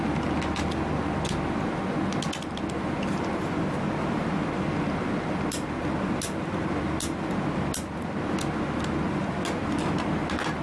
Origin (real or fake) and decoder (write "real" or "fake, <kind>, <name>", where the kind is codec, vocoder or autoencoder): real